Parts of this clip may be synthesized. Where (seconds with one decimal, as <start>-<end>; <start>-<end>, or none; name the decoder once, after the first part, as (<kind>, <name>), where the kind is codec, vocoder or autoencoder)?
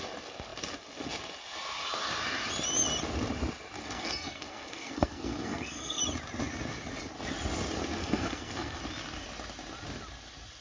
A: 3.8-6.0 (codec, SNAC); 8.0-8.8